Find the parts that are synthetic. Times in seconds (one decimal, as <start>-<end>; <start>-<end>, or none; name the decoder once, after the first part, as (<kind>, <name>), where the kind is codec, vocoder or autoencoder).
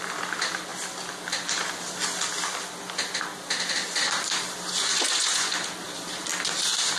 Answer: 4.8-5.5 (vocoder, Vocos)